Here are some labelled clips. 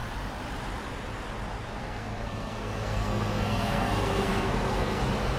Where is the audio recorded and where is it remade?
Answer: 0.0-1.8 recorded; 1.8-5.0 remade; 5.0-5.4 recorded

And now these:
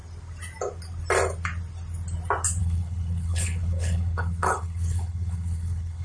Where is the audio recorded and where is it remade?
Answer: 0.0-2.6 recorded; 2.6-6.0 remade

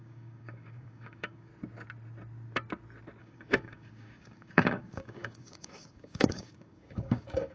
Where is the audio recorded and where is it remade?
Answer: 0.0-1.5 remade; 1.5-3.2 recorded; 3.2-7.5 remade